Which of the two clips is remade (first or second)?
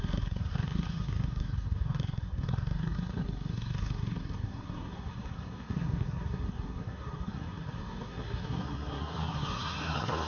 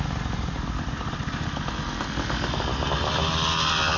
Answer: first